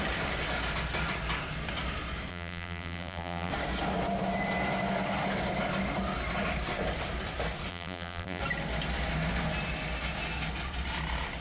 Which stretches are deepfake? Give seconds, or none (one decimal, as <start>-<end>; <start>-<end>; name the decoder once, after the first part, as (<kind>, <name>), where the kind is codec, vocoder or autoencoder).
2.3-3.5 (vocoder, BigVGAN v2); 7.7-8.4